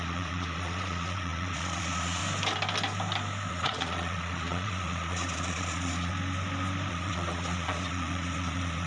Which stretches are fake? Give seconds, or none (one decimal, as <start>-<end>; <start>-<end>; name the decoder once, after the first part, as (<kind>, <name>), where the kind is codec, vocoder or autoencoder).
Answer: 0.0-2.2 (vocoder, Vocos); 3.5-6.1; 6.9-8.9